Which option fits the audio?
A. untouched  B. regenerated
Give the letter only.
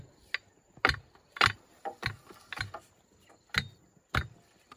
A